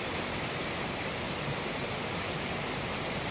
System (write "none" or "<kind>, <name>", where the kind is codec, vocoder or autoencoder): none